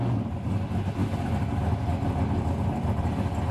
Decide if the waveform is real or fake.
real